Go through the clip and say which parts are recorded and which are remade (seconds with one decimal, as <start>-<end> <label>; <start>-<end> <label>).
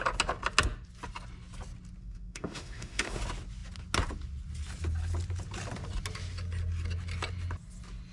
0.0-2.0 recorded; 2.0-3.2 remade; 3.2-8.1 recorded